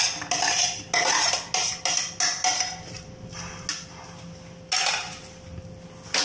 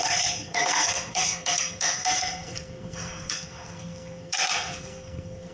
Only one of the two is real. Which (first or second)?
first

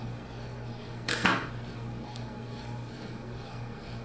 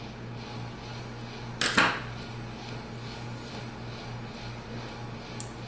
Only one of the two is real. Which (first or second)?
second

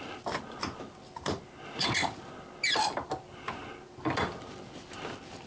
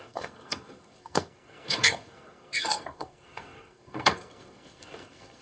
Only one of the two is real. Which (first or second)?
first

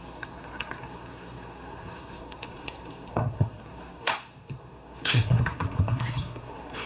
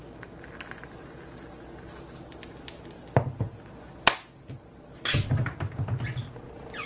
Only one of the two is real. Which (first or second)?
second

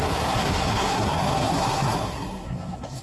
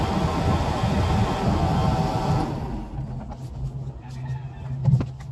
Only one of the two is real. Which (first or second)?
second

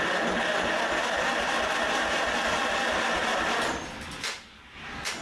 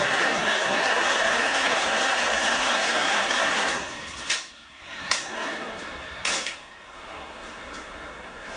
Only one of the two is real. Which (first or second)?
first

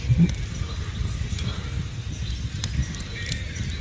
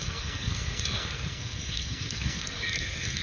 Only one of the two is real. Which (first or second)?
first